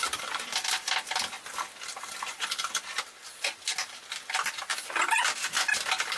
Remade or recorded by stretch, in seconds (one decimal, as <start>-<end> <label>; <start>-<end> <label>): 0.0-6.2 recorded